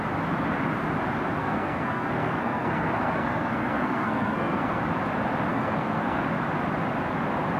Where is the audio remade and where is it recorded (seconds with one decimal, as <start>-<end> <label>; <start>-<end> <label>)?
0.0-1.4 recorded; 1.4-4.8 remade; 4.8-5.5 recorded; 5.5-6.2 remade; 6.2-7.6 recorded